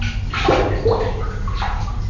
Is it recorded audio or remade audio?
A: recorded